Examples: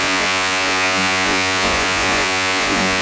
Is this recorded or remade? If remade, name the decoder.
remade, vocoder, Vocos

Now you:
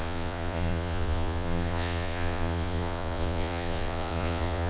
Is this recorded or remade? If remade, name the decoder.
remade, vocoder, Vocos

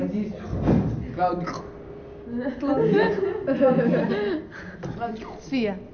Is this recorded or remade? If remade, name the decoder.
recorded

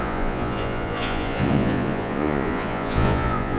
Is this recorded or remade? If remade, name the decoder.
remade, vocoder, Vocos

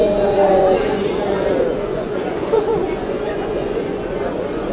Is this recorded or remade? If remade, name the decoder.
remade, vocoder, Vocos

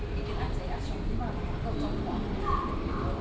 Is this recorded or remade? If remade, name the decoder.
recorded